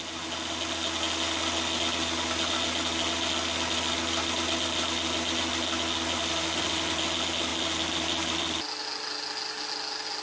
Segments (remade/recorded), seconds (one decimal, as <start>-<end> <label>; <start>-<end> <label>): 0.0-10.2 recorded